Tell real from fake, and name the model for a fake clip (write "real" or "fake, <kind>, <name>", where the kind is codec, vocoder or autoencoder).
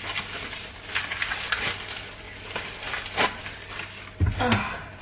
real